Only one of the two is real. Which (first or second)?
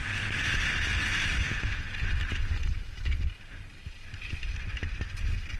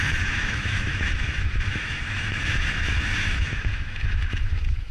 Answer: first